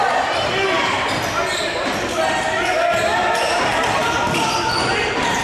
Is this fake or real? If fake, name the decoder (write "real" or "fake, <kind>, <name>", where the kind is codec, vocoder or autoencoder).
real